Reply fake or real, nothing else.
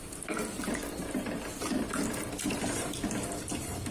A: fake